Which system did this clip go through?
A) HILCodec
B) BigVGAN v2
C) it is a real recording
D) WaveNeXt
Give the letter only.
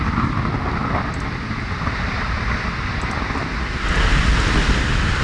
C